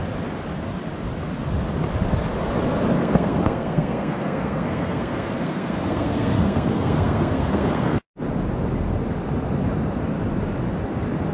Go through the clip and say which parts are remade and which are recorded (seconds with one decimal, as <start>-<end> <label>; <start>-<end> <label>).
0.0-3.0 recorded; 3.0-8.1 remade; 8.1-11.3 recorded